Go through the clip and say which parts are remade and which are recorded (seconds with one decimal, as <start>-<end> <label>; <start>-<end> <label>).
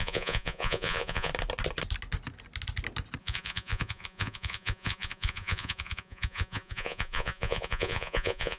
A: 0.0-1.3 remade; 1.3-3.2 recorded; 3.2-8.6 remade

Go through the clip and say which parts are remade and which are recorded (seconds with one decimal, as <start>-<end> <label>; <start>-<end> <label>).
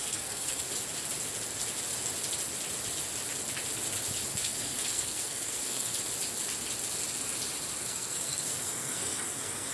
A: 0.0-0.7 remade; 0.7-4.3 recorded; 4.3-6.0 remade; 6.0-7.8 recorded; 7.8-9.7 remade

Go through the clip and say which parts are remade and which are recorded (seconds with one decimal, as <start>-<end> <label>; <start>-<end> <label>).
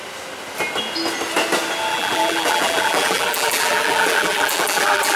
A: 0.0-1.9 recorded; 1.9-5.2 remade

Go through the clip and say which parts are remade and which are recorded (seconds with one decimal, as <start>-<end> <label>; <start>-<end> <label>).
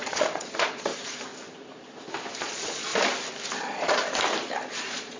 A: 0.0-0.9 remade; 0.9-2.4 recorded; 2.4-2.9 remade; 2.9-3.6 recorded; 3.6-4.0 remade; 4.0-4.8 recorded; 4.8-5.2 remade